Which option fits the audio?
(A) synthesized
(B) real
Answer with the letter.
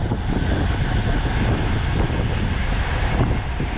B